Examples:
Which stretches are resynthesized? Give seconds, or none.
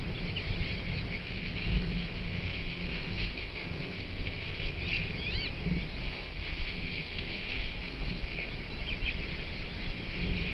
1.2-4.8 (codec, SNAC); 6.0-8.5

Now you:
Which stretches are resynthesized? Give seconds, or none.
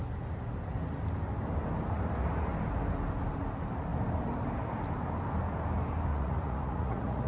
6.1-7.3 (vocoder, Vocos)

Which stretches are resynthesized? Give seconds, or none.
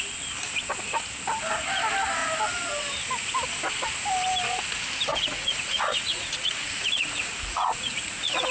5.1-8.5 (vocoder, Vocos)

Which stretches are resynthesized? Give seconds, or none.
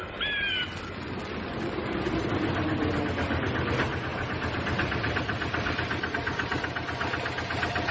none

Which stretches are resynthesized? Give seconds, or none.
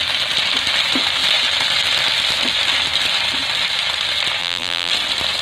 4.4-4.9 (vocoder, BigVGAN v2)